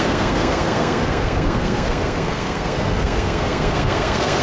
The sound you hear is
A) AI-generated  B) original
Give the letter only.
A